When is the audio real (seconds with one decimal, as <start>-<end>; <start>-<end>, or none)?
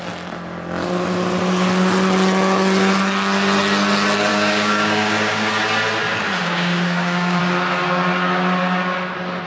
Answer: 0.0-4.3; 5.5-6.4; 7.4-9.5